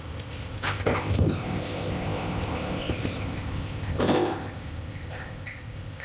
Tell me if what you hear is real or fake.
fake